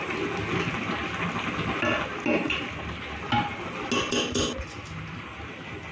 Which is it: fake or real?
real